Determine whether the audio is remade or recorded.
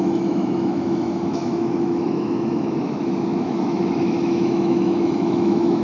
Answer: remade